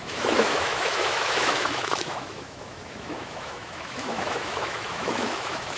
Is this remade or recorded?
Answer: remade